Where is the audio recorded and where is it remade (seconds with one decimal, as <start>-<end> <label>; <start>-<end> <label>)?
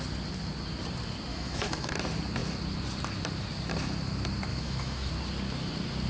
0.0-1.3 recorded; 1.3-1.9 remade; 1.9-4.5 recorded; 4.5-5.1 remade; 5.1-6.1 recorded